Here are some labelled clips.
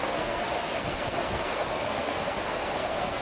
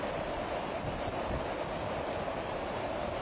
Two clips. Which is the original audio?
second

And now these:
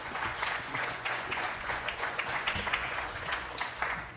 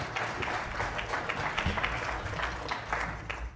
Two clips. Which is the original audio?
second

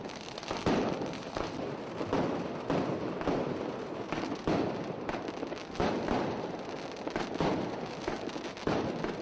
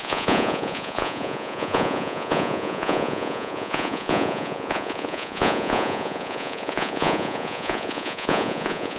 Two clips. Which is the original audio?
first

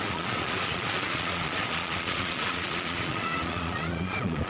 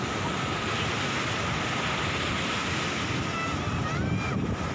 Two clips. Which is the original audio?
second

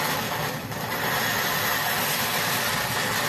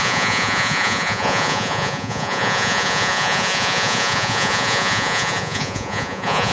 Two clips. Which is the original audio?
first